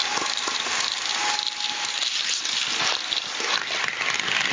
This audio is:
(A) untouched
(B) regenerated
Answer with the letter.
A